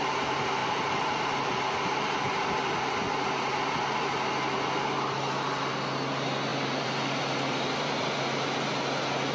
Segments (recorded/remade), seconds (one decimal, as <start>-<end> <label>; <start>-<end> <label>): 0.0-0.6 recorded; 0.6-2.8 remade; 2.8-6.5 recorded; 6.5-8.2 remade; 8.2-9.3 recorded